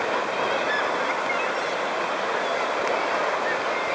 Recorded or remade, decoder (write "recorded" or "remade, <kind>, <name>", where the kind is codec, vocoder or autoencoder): recorded